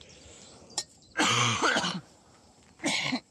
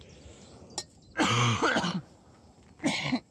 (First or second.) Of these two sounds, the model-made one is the first